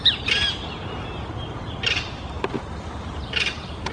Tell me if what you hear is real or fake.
real